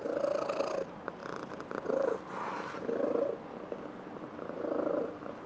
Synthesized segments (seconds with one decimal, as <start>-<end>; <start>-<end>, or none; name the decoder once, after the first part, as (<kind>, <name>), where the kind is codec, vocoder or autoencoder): none